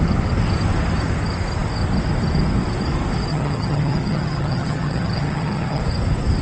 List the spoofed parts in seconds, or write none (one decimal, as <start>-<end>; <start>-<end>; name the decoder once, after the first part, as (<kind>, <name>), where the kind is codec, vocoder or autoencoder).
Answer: 3.3-5.8 (vocoder, HiFi-GAN)